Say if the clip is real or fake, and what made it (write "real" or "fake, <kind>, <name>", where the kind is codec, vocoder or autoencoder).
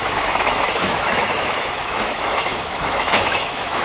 fake, autoencoder, DAC-VAE